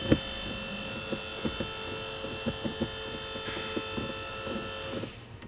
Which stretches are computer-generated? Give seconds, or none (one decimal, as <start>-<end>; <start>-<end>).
none